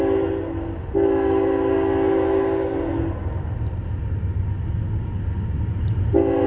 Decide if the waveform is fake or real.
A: real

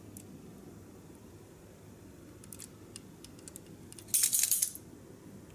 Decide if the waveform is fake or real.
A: real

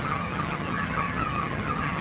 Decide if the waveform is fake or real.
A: fake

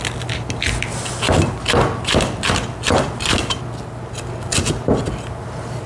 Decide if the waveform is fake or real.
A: real